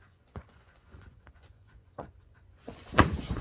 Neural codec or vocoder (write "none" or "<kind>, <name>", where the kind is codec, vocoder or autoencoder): vocoder, Vocos